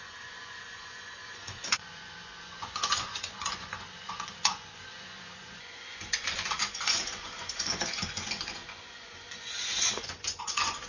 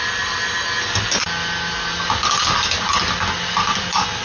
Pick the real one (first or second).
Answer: second